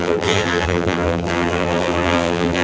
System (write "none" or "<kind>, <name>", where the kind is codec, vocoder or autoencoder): vocoder, BigVGAN v2